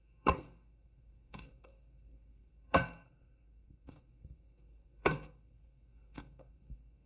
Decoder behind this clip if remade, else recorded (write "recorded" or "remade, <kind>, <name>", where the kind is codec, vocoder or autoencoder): remade, codec, SNAC